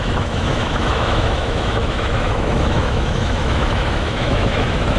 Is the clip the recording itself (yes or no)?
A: no